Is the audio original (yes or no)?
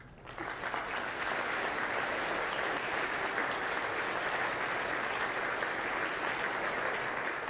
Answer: yes